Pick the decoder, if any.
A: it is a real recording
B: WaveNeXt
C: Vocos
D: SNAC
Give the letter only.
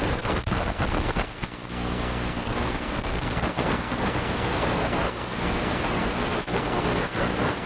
D